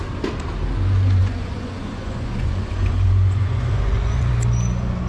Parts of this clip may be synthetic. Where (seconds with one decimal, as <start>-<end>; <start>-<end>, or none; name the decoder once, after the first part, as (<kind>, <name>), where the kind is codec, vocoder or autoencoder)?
1.2-4.3 (vocoder, Vocos)